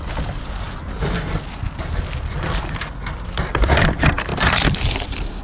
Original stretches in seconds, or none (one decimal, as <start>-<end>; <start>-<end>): 0.0-5.4